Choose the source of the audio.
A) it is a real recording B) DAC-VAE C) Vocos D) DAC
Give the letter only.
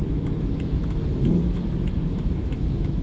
B